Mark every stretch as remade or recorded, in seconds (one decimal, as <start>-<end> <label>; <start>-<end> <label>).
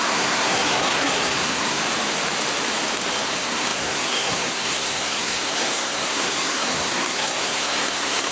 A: 0.0-1.8 remade; 1.8-3.2 recorded; 3.2-8.3 remade